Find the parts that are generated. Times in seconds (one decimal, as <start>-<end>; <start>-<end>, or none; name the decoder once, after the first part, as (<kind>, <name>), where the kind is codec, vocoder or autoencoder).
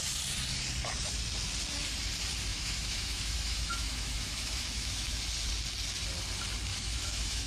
2.5-5.2 (autoencoder, DAC-VAE); 6.7-7.5